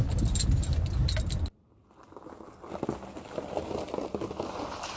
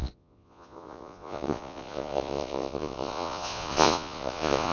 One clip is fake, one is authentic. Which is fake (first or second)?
second